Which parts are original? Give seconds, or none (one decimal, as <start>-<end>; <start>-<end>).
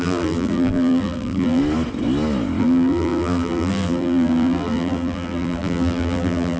1.6-2.6